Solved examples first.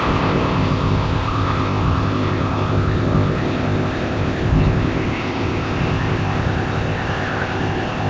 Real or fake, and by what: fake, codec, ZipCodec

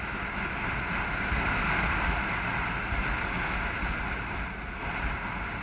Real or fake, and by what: real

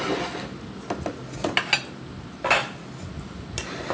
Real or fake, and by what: real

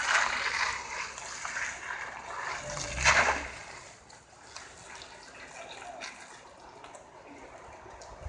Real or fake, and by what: real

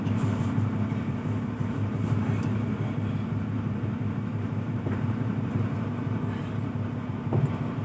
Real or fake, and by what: fake, vocoder, BigVGAN v2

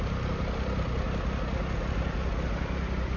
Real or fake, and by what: real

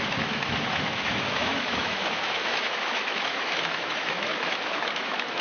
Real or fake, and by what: fake, autoencoder, DAC-VAE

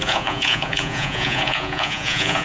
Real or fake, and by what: fake, vocoder, Vocos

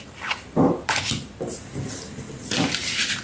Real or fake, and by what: fake, vocoder, BigVGAN v2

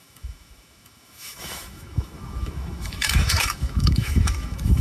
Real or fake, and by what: fake, autoencoder, DAC-VAE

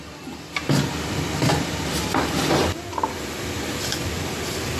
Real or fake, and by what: real